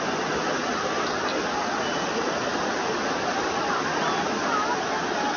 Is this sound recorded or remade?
recorded